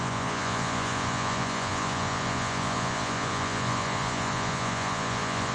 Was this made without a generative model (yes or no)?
no